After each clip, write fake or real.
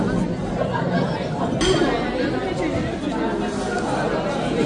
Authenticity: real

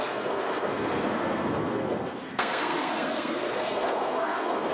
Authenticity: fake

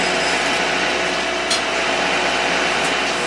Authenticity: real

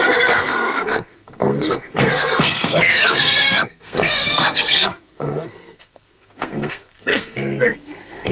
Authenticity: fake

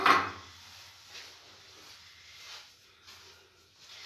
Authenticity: real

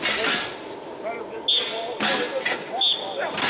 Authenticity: real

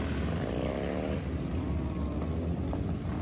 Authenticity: real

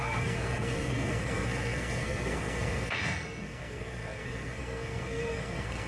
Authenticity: fake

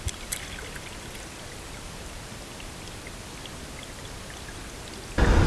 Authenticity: real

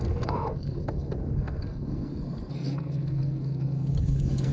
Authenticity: fake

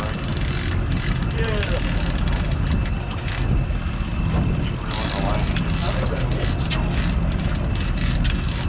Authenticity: real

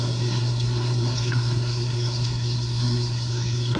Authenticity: fake